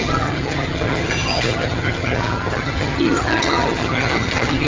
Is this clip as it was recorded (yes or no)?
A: no